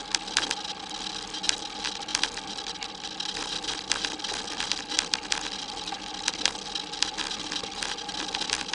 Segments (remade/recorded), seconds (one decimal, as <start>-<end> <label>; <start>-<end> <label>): 0.0-8.7 recorded